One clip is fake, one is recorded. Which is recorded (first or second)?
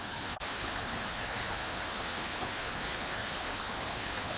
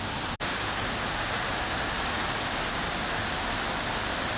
second